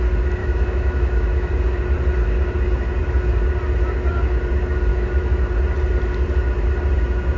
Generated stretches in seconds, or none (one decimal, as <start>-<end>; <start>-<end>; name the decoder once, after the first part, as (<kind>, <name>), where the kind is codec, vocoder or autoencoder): 0.4-1.5 (autoencoder, DAC-VAE); 4.9-5.4